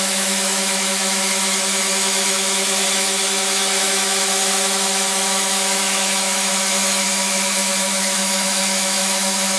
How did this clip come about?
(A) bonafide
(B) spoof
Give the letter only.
B